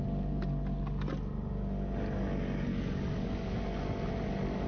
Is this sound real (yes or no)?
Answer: yes